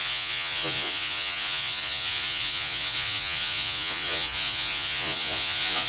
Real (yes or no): no